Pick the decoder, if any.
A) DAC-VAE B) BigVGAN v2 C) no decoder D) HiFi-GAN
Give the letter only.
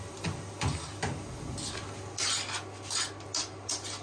C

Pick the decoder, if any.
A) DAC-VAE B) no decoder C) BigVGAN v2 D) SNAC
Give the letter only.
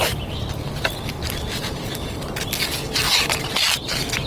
B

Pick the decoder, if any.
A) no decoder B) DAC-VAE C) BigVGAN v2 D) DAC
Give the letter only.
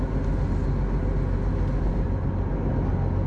A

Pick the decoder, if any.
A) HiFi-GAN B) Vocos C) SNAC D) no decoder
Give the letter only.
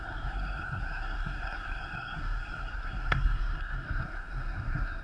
C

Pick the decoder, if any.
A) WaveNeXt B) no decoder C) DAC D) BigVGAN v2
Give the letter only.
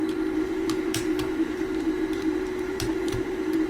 D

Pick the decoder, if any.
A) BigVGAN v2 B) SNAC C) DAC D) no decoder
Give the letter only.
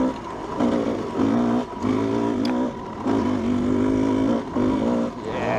D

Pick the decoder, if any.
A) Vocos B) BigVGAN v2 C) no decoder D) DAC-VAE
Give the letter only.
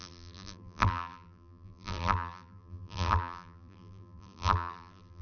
B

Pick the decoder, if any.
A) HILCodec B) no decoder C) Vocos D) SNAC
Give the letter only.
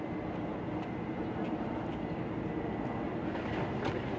B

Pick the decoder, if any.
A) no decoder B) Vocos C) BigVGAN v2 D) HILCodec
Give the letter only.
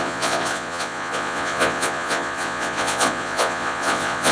B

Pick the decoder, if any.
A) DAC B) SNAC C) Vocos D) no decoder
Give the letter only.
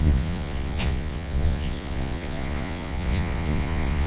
C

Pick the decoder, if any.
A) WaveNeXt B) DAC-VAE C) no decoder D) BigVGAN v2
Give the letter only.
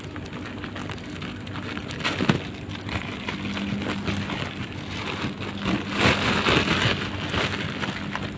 C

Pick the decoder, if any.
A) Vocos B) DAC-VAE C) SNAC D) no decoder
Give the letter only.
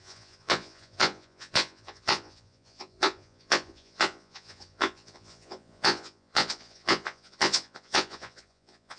A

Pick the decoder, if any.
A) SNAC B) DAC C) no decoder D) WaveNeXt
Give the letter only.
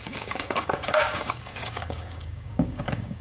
B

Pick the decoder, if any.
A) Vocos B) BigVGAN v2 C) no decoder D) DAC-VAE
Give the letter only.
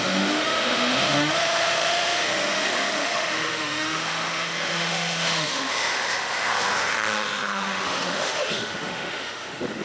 D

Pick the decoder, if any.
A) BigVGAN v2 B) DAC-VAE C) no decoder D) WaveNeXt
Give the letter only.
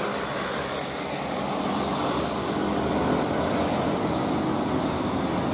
C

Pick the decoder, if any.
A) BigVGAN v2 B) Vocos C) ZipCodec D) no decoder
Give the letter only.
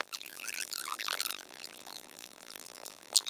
A